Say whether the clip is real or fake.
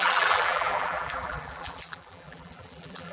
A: fake